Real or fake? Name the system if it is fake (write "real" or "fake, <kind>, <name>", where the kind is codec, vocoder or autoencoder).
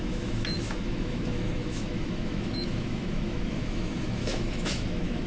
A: fake, autoencoder, DAC-VAE